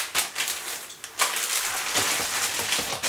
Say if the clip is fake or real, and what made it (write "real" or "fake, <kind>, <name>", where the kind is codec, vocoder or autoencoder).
real